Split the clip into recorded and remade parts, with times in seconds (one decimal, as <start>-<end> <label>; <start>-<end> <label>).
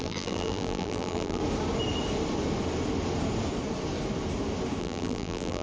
0.0-1.4 remade; 1.4-4.8 recorded; 4.8-5.6 remade